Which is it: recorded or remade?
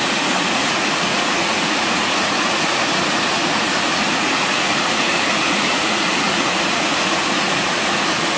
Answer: remade